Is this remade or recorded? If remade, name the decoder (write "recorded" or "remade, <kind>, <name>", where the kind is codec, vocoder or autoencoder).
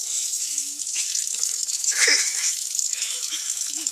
remade, autoencoder, DAC-VAE